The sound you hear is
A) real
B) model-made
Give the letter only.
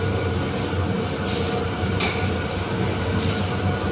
A